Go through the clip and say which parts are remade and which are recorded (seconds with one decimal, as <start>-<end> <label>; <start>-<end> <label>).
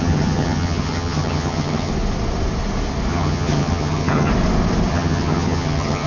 0.0-1.9 remade; 1.9-3.1 recorded; 3.1-4.3 remade; 4.3-4.9 recorded; 4.9-6.1 remade